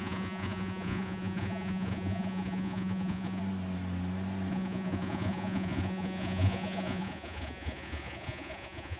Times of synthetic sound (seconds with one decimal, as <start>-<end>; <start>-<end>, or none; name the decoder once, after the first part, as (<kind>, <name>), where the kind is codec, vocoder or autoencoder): 0.0-3.4 (vocoder, Vocos); 4.5-9.0